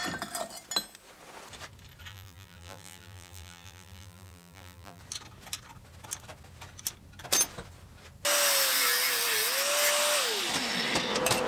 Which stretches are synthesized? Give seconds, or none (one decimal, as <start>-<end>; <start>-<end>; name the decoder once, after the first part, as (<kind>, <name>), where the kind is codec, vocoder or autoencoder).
2.1-5.0 (vocoder, BigVGAN v2)